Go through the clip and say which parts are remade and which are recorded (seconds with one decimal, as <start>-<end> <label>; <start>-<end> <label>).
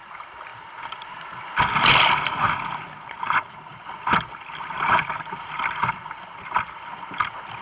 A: 0.0-3.7 recorded; 3.7-6.9 remade; 6.9-7.6 recorded